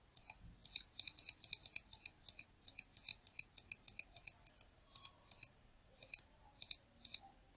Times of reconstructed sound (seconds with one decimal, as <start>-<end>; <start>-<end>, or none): none

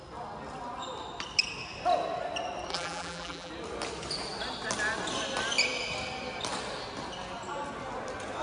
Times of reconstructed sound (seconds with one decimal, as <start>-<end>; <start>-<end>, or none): 2.7-3.5

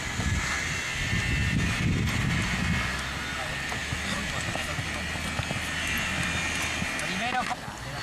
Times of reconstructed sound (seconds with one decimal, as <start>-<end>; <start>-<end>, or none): none

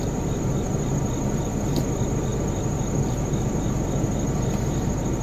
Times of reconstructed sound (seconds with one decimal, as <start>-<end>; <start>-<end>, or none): none